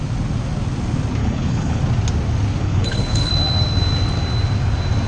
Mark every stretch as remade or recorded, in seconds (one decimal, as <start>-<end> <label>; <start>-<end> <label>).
0.0-1.2 recorded; 1.2-1.8 remade; 1.8-2.6 recorded; 2.6-3.3 remade; 3.3-5.1 recorded